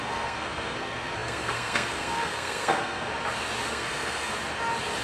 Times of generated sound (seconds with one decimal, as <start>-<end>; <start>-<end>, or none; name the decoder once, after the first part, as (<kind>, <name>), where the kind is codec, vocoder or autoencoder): 0.0-3.1 (codec, SNAC); 3.7-4.3